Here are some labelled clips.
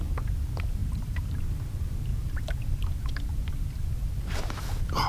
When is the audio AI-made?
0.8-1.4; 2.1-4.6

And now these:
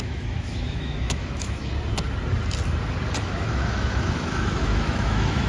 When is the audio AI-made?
0.0-1.7; 3.2-5.5

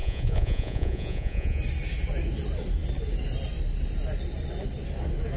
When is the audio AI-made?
0.0-1.6

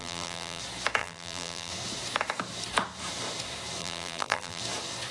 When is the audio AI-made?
0.0-0.6; 1.0-1.7; 3.8-4.6